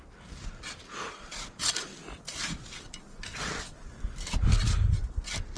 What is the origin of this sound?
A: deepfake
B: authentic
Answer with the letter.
B